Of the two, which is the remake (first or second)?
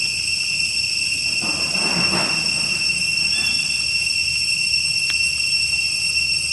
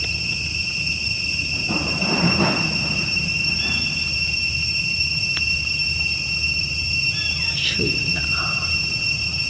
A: second